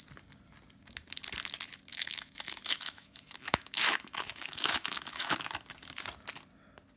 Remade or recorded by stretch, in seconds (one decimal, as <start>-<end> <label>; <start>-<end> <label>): 0.0-1.9 recorded; 1.9-5.5 remade; 5.5-7.0 recorded